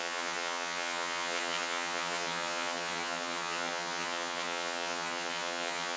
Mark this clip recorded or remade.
remade